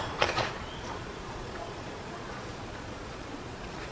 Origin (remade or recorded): remade